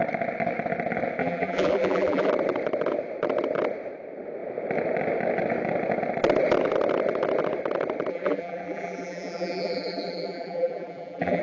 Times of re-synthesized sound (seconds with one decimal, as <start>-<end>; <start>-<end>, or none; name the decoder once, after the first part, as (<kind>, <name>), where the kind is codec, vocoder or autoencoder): 1.2-2.3 (vocoder, BigVGAN v2); 8.1-11.4